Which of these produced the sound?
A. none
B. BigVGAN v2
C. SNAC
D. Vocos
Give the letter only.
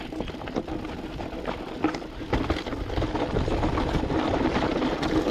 A